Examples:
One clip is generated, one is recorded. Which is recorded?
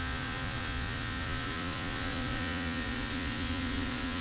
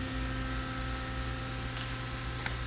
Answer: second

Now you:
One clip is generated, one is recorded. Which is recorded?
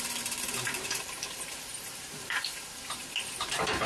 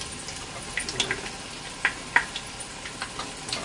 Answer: second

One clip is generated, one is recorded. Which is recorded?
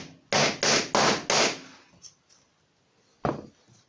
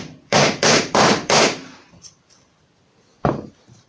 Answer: first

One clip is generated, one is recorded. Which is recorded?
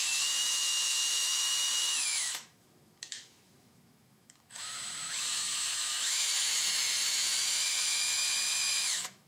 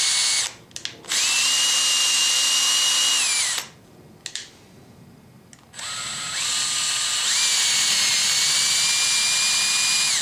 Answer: second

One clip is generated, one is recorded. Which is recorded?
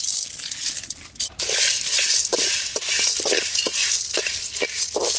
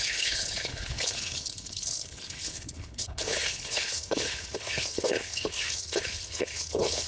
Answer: first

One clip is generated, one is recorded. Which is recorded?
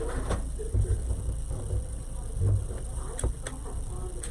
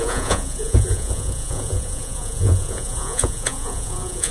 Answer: first